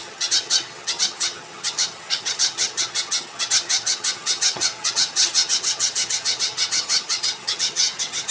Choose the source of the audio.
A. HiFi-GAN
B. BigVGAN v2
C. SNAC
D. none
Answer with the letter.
A